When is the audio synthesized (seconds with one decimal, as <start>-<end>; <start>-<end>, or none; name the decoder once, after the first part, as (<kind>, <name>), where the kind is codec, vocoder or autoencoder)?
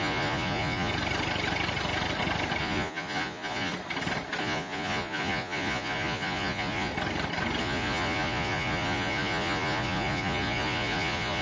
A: 0.0-0.9 (vocoder, Vocos); 2.6-3.7; 4.4-6.9; 7.6-11.4